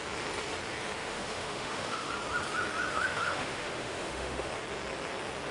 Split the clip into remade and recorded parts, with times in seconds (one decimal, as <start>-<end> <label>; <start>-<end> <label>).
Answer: 0.0-1.0 recorded; 1.0-2.1 remade; 2.1-2.9 recorded; 2.9-4.5 remade; 4.5-5.5 recorded